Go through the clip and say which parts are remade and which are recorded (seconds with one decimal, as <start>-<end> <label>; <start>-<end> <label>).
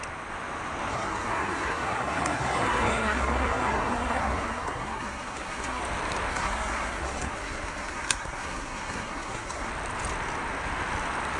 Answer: 0.0-0.9 recorded; 0.9-5.8 remade; 5.8-6.3 recorded; 6.3-9.7 remade; 9.7-11.4 recorded